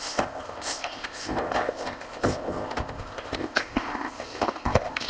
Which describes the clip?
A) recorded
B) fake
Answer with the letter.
B